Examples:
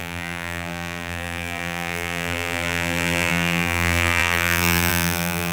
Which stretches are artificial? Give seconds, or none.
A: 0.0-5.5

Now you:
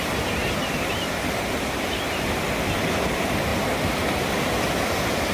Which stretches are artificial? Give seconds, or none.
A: 0.4-2.0; 3.5-4.4

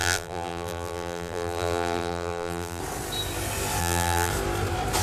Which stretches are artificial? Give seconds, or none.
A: 0.0-2.8; 3.8-4.3

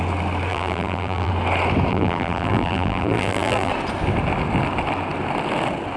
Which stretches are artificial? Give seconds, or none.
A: 0.5-1.3; 1.9-3.7

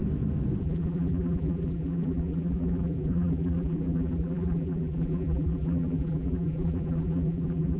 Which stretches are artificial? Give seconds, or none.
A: 0.6-7.8

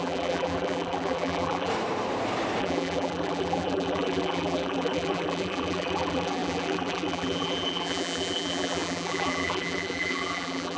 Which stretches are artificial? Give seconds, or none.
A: 0.0-1.7; 2.6-10.8

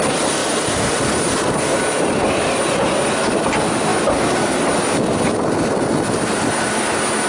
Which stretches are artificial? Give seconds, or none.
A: 0.4-1.2